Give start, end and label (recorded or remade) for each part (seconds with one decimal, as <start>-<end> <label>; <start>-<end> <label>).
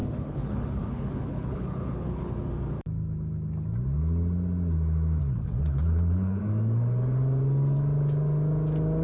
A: 0.0-2.3 remade; 2.3-5.2 recorded; 5.2-6.4 remade; 6.4-9.0 recorded